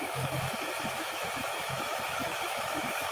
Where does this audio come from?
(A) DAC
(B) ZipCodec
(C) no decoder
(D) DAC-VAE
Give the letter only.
D